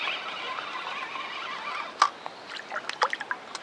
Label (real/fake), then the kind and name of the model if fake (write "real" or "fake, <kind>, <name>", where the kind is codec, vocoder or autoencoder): real